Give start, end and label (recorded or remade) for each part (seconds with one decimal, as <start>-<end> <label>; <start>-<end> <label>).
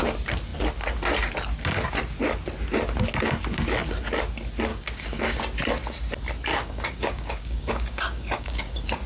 0.0-4.7 recorded; 4.7-5.4 remade; 5.4-6.5 recorded; 6.5-8.7 remade; 8.7-9.1 recorded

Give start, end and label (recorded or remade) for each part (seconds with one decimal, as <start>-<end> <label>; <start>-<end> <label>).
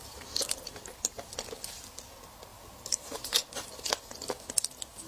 0.0-1.3 remade; 1.3-2.5 recorded; 2.5-3.9 remade; 3.9-5.1 recorded